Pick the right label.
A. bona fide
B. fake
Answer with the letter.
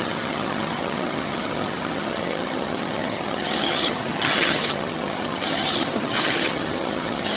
B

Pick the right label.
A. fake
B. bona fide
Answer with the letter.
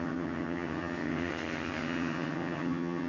A